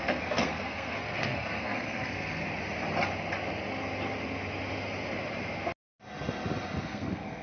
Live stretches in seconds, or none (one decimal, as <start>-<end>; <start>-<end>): 2.4-6.8